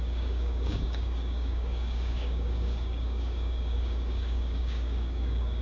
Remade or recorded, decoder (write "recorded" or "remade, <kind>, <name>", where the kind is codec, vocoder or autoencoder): remade, codec, DAC